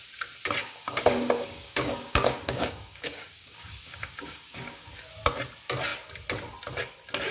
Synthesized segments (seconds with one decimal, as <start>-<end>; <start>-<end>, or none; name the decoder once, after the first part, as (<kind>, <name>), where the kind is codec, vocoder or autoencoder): 0.6-4.9 (codec, DAC)